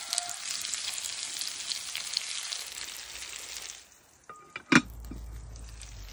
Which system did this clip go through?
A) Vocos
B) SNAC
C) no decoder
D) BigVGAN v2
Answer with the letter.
C